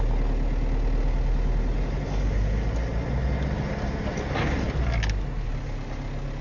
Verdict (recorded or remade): recorded